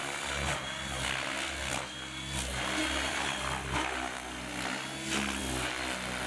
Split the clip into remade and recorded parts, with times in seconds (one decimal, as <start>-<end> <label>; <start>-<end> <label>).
0.0-6.3 recorded